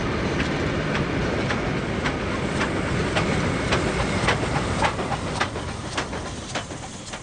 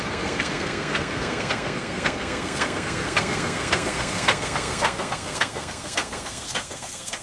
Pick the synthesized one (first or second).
second